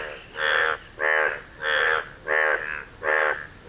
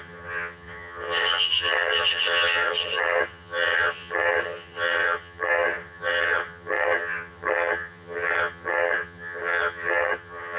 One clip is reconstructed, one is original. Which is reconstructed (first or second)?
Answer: second